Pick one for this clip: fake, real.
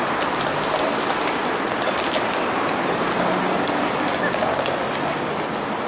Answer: real